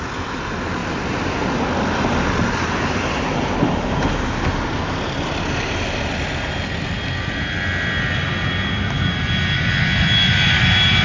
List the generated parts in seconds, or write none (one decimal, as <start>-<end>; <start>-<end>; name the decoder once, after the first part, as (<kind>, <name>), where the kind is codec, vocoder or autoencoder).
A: none